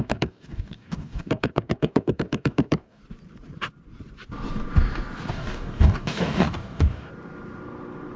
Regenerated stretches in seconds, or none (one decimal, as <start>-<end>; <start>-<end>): 0.0-3.0; 5.3-7.1